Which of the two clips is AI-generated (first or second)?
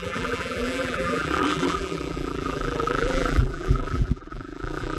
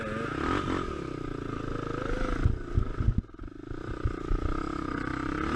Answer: first